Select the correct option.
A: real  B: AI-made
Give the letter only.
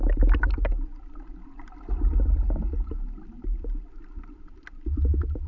A